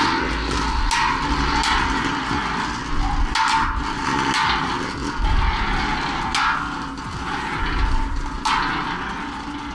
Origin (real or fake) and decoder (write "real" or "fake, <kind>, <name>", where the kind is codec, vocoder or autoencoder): real